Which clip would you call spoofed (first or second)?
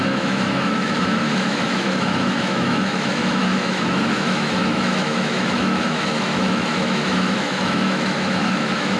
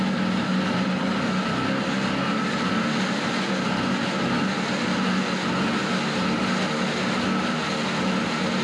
first